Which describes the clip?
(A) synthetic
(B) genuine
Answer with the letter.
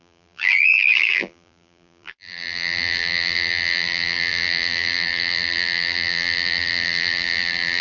A